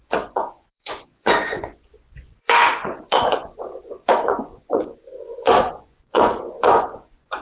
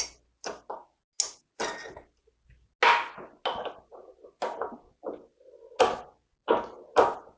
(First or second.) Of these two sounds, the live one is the second